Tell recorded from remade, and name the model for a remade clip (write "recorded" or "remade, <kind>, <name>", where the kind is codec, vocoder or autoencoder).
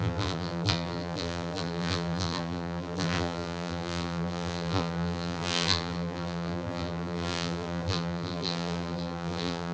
remade, vocoder, BigVGAN v2